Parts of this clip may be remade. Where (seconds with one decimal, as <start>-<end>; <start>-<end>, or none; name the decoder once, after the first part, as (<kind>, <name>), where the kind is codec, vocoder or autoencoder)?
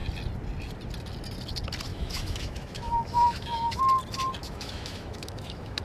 1.9-3.8 (autoencoder, DAC-VAE); 4.4-5.8